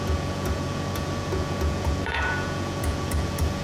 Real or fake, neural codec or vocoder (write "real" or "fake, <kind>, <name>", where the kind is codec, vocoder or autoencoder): fake, vocoder, Vocos